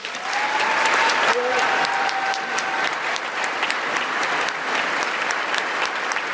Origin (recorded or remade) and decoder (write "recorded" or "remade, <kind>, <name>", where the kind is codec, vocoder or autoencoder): recorded